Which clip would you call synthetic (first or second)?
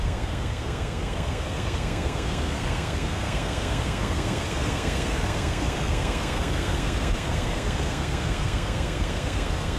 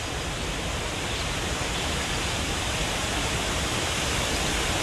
first